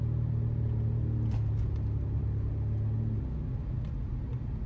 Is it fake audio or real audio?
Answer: real